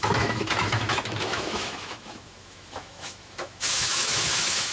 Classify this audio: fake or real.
fake